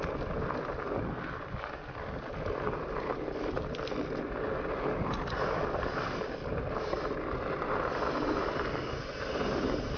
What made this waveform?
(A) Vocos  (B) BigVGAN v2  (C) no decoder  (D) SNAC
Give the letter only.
C